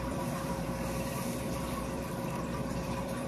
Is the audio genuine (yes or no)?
no